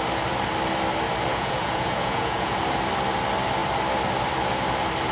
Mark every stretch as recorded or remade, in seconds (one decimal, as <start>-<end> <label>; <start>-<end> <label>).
0.0-1.3 recorded; 1.3-2.6 remade; 2.6-5.1 recorded